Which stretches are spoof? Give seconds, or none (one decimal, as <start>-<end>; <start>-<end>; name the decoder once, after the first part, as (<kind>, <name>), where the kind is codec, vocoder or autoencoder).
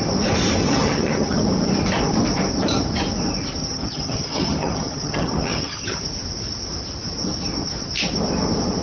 0.6-1.4 (vocoder, HiFi-GAN); 3.6-6.0